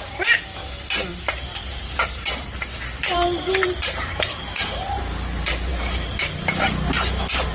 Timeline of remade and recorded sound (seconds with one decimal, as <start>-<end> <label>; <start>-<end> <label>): 0.0-1.7 recorded; 1.7-5.0 remade; 5.0-7.5 recorded